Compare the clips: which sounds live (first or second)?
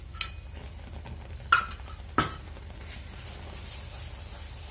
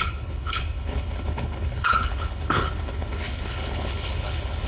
first